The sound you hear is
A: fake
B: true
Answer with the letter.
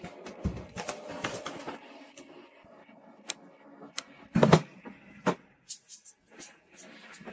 B